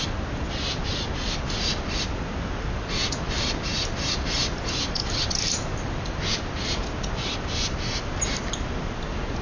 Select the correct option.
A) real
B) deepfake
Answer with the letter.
A